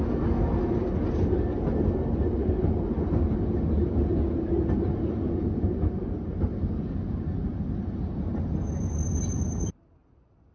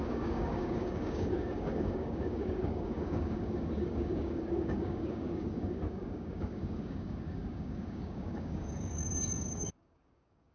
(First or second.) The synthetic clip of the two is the second